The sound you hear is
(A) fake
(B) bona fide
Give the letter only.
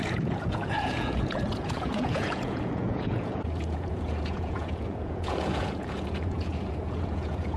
A